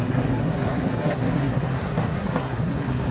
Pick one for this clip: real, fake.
fake